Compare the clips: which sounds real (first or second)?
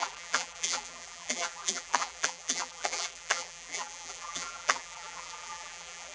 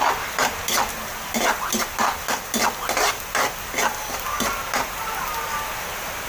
second